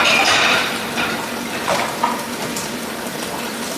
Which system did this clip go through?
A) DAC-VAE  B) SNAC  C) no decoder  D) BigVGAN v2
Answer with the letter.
D